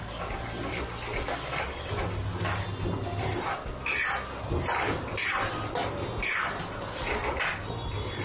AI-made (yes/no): no